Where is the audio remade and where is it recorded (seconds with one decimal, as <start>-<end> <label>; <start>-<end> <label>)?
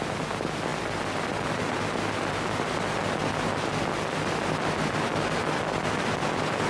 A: 0.0-6.7 recorded